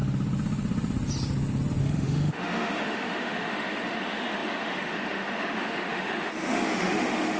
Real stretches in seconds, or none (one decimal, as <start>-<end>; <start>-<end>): 0.0-1.8

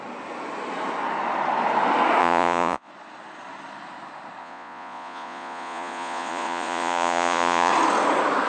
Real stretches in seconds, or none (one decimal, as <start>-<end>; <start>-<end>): 0.0-2.2; 2.9-4.4; 7.7-8.5

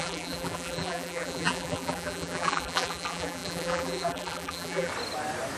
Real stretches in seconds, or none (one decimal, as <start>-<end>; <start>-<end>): 4.9-5.6

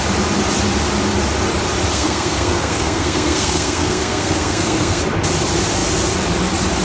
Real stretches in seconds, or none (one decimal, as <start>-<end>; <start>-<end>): 0.0-1.9; 5.0-6.8

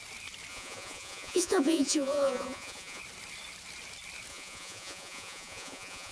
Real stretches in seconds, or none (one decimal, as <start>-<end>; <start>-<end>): 0.0-0.5; 3.0-4.3

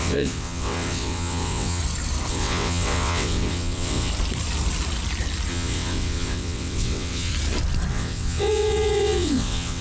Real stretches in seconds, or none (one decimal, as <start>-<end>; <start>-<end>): 1.8-2.3; 4.1-5.5; 7.3-7.9